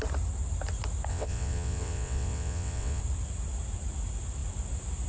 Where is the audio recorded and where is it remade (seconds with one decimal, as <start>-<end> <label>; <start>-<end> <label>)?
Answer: 0.0-1.1 recorded; 1.1-3.0 remade; 3.0-5.1 recorded